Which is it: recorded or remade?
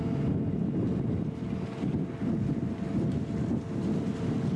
recorded